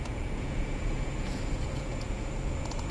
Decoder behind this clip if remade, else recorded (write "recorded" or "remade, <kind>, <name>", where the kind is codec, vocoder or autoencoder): remade, vocoder, Vocos